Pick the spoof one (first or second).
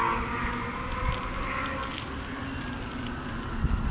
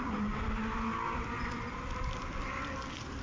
second